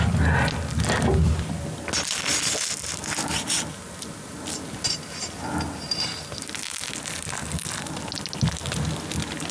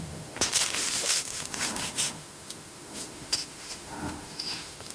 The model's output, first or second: second